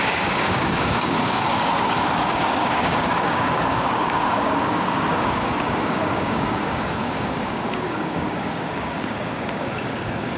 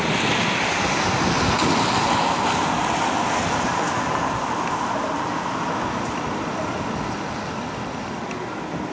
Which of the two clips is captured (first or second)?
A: second